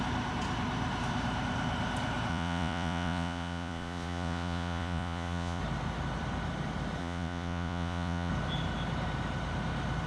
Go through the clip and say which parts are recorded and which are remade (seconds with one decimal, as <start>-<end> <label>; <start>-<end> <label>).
0.0-2.3 recorded; 2.3-5.6 remade; 5.6-7.0 recorded; 7.0-8.3 remade; 8.3-10.1 recorded